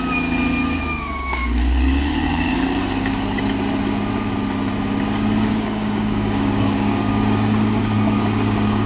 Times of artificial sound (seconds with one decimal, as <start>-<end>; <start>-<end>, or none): 0.6-3.4; 5.5-8.9